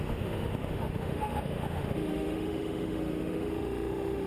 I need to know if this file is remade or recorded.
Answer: remade